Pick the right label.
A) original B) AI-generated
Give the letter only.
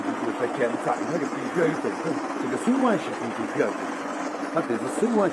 B